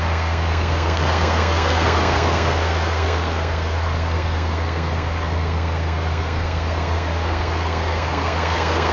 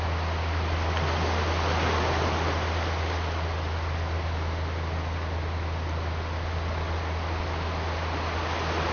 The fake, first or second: first